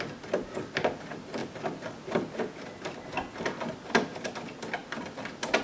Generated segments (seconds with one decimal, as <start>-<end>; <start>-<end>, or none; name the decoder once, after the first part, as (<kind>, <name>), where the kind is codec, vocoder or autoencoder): none